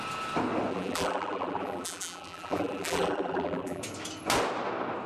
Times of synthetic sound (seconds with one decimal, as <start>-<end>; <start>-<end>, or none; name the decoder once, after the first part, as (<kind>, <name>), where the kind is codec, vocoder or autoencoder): 0.7-3.8 (vocoder, BigVGAN v2)